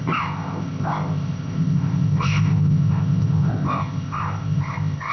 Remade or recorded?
remade